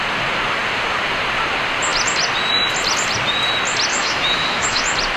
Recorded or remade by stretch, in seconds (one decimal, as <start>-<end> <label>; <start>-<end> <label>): 0.0-3.9 recorded; 3.9-4.8 remade; 4.8-5.2 recorded